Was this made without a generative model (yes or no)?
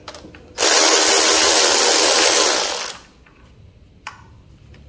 yes